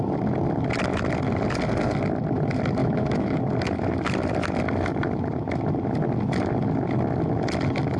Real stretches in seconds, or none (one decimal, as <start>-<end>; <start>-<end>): 0.0-2.8; 3.4-8.0